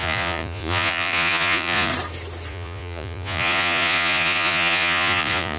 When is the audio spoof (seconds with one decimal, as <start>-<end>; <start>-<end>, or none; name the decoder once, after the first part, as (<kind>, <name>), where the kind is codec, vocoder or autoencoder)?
0.0-1.9 (vocoder, Vocos); 2.5-5.6